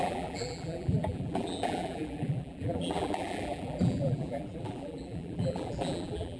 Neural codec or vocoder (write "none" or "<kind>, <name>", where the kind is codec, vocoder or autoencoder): vocoder, BigVGAN v2